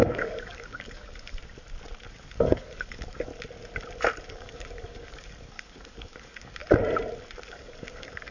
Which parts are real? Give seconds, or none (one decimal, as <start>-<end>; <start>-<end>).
1.4-2.1; 3.3-4.3; 6.6-7.5